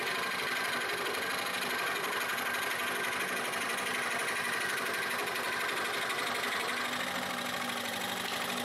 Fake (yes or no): no